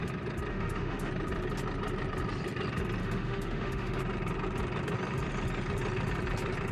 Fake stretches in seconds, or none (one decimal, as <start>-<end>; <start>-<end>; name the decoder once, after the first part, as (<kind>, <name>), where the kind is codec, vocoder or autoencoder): 0.5-1.1 (autoencoder, DAC-VAE); 3.0-4.0